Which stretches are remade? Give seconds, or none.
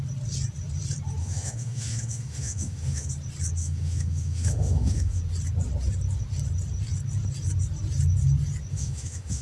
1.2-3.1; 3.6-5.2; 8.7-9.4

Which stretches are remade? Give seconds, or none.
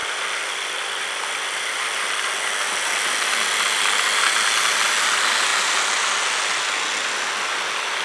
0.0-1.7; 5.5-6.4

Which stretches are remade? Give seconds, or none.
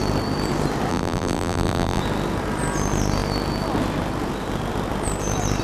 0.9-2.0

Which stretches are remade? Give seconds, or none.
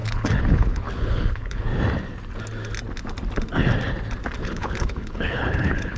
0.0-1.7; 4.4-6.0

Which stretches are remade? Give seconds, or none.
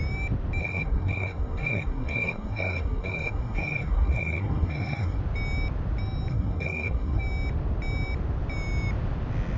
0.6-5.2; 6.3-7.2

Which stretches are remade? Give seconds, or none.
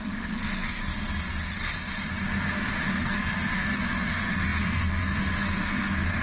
0.0-0.9; 2.9-6.2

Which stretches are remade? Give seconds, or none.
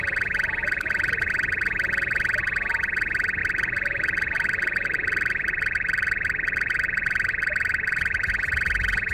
0.6-1.3; 3.4-8.3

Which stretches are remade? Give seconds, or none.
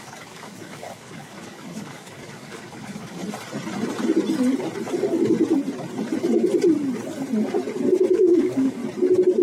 0.0-3.2; 8.1-8.8